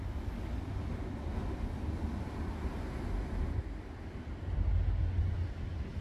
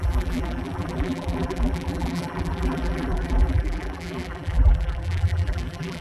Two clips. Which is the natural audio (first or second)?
first